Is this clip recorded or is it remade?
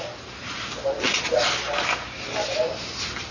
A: recorded